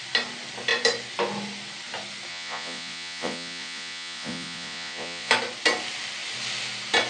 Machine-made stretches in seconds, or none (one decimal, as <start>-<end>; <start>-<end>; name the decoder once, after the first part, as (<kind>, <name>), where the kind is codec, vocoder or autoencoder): 2.3-5.3 (vocoder, Vocos)